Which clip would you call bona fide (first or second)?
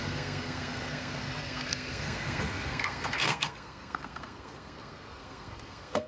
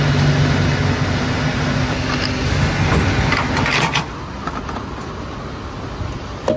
second